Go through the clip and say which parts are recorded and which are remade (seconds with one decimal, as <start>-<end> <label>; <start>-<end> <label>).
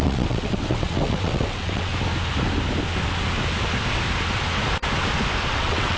0.0-1.9 remade; 1.9-5.5 recorded; 5.5-6.0 remade